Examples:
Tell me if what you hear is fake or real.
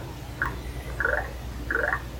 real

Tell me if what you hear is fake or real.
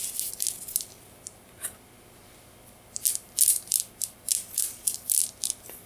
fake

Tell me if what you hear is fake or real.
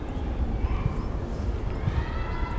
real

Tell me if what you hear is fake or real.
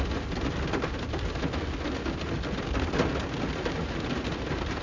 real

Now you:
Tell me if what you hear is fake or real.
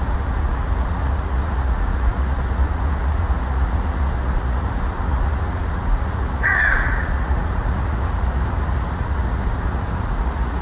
fake